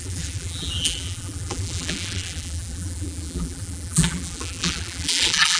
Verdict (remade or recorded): remade